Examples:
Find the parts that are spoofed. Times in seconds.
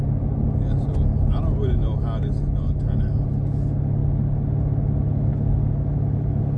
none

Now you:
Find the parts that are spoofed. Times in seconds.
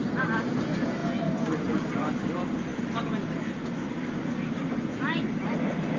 none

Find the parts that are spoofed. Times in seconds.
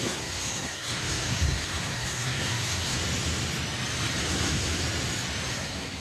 0.0-3.0 (codec, SNAC); 4.2-4.8; 5.5-6.0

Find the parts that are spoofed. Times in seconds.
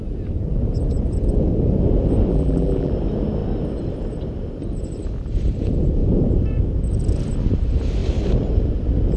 2.3-2.9 (vocoder, BigVGAN v2)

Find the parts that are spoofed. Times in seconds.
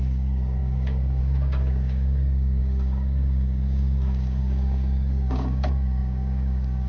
0.0-6.9 (codec, DAC)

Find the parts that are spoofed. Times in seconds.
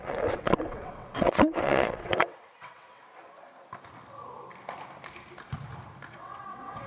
0.0-3.0 (vocoder, WaveNeXt); 6.1-6.9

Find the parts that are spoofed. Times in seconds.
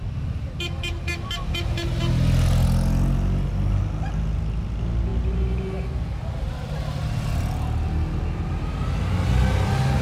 none